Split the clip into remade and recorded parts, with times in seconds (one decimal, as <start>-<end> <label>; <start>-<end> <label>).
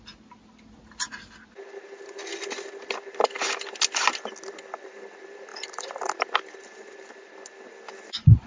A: 0.0-8.5 recorded